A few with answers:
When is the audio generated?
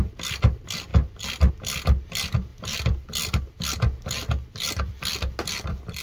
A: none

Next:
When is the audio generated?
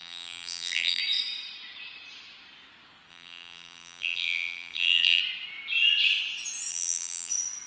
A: 0.0-1.0 (vocoder, BigVGAN v2); 3.1-5.2; 6.7-7.3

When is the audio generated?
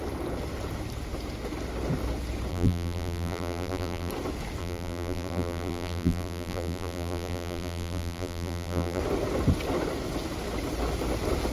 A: 2.5-4.1 (vocoder, BigVGAN v2); 4.6-9.0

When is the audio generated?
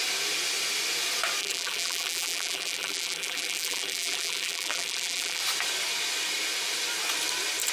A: 1.4-5.4 (vocoder, BigVGAN v2)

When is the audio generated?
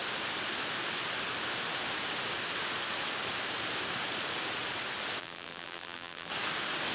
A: 5.2-6.3 (vocoder, BigVGAN v2)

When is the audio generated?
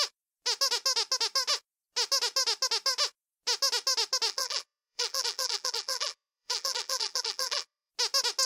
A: 4.3-7.9 (vocoder, BigVGAN v2)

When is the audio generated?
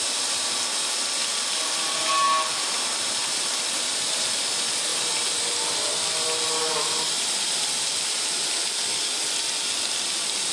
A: none